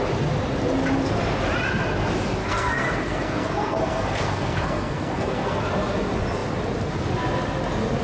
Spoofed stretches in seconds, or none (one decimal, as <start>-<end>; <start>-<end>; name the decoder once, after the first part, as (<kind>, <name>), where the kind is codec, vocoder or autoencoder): 2.4-5.6 (codec, SNAC)